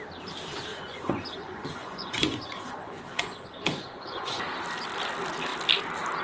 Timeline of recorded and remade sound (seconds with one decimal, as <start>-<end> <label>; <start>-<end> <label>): 0.0-0.7 recorded; 0.7-4.4 remade; 4.4-6.2 recorded